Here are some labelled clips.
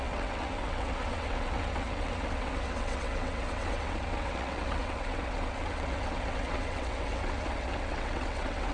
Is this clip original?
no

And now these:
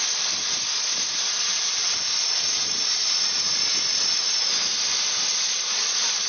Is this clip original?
yes